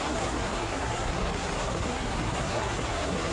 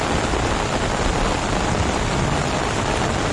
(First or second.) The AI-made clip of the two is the first